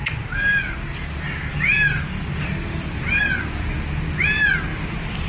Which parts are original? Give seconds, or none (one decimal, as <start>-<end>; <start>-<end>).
0.0-4.7